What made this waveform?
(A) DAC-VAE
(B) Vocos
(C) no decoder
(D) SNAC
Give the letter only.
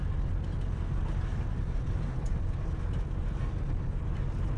C